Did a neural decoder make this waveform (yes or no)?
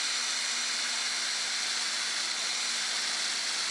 no